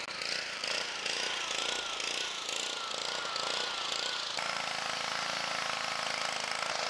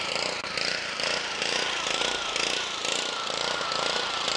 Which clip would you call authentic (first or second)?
first